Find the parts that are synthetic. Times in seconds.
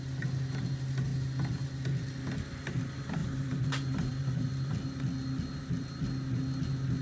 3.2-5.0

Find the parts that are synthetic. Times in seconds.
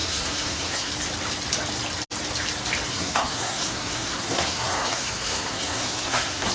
0.0-0.9; 2.9-6.5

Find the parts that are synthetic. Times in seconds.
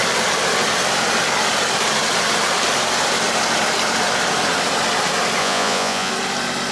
5.4-6.1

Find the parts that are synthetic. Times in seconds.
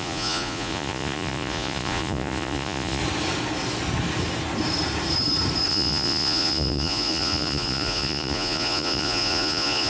0.0-3.0; 5.7-9.9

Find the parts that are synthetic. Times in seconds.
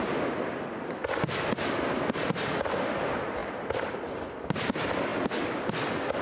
none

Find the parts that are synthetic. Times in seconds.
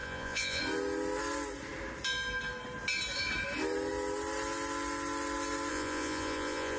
0.0-0.6; 5.7-6.8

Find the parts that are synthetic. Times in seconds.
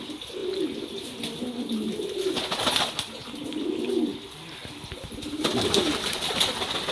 0.4-1.2; 3.2-4.0; 4.6-5.3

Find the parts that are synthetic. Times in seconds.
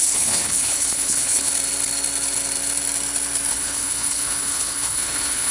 0.0-1.5; 3.5-5.5